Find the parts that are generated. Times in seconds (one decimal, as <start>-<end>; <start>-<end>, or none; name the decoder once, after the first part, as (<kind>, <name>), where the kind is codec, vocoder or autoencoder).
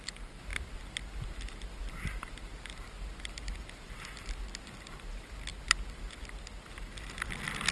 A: none